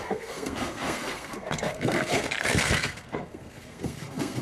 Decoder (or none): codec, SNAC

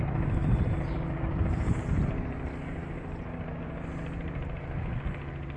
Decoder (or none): none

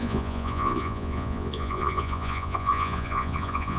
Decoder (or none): vocoder, Vocos